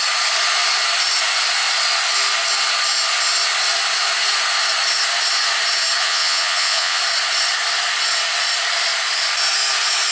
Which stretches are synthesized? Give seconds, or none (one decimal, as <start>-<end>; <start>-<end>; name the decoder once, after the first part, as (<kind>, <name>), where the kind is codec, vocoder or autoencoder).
6.0-7.0 (vocoder, Vocos)